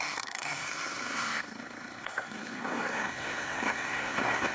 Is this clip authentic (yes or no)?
no